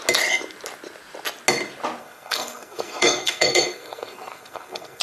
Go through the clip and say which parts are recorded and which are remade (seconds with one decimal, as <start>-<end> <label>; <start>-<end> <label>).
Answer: 0.0-2.0 recorded; 2.0-5.0 remade